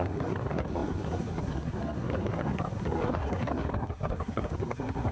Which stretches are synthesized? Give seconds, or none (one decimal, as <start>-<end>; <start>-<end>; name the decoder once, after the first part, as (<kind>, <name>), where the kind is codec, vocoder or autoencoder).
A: 0.0-5.1 (codec, SNAC)